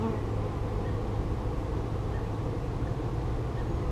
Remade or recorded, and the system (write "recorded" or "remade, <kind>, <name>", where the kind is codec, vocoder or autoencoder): recorded